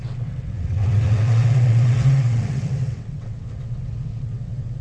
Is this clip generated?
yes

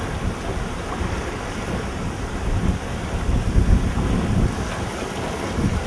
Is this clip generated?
no